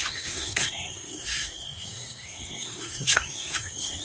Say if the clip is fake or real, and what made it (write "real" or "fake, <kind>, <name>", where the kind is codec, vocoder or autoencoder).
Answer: fake, codec, SNAC